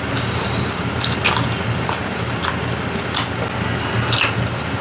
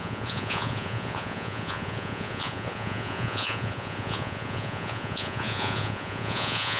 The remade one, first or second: second